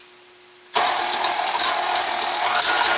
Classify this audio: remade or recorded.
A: recorded